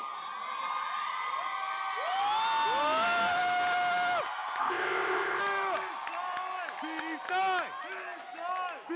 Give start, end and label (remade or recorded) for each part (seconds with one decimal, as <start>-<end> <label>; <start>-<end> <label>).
0.0-4.6 recorded; 4.6-5.4 remade; 5.4-9.0 recorded

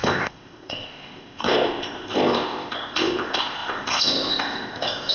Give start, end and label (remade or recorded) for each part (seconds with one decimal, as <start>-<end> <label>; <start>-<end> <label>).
0.0-5.1 remade

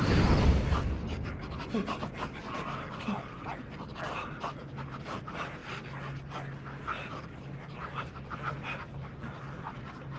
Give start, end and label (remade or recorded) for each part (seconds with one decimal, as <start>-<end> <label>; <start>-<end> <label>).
0.0-10.2 recorded

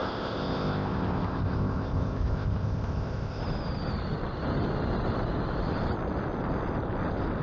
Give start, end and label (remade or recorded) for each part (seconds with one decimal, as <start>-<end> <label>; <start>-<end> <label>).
0.0-3.4 remade; 3.4-7.4 recorded

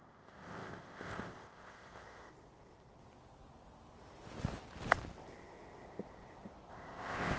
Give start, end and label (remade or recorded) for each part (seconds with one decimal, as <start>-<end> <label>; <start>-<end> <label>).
0.0-2.3 remade; 2.3-6.7 recorded; 6.7-7.4 remade

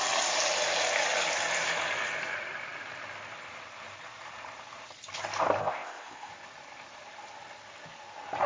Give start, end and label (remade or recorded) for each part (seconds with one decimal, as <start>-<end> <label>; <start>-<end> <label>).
0.0-5.6 recorded; 5.6-6.3 remade; 6.3-8.5 recorded

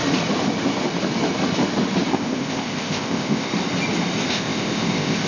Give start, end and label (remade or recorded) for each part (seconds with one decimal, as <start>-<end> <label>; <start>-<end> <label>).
0.0-2.1 recorded; 2.1-3.5 remade; 3.5-4.3 recorded; 4.3-5.3 remade

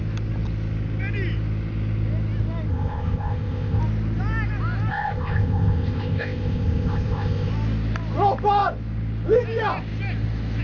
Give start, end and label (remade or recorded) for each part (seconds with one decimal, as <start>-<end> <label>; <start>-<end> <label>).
0.0-2.7 recorded; 2.7-3.8 remade; 3.8-4.9 recorded; 4.9-7.5 remade; 7.5-10.6 recorded